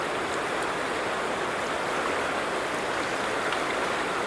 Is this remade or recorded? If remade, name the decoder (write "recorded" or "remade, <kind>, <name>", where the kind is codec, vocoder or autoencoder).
recorded